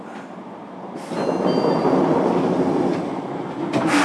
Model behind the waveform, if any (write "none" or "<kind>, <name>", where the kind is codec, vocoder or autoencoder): none